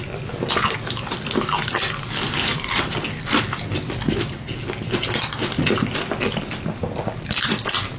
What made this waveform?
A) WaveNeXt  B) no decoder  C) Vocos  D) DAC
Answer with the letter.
B